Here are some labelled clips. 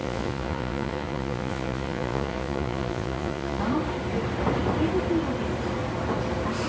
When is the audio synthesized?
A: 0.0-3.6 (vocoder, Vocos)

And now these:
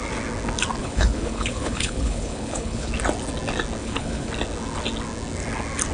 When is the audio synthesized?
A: 0.8-2.9 (codec, HILCodec); 3.8-4.3

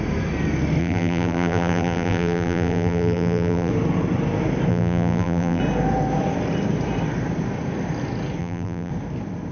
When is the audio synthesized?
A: 0.8-3.7 (vocoder, BigVGAN v2); 4.7-5.6; 8.4-8.9

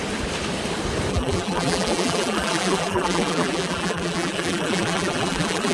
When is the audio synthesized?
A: 1.1-5.7 (vocoder, BigVGAN v2)

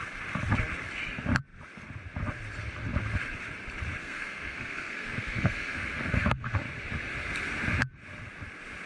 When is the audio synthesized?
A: 4.0-6.6 (codec, SNAC)